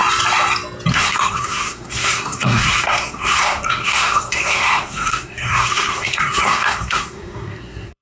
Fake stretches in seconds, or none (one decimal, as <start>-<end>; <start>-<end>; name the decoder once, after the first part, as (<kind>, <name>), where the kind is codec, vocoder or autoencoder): 0.9-8.0 (codec, SNAC)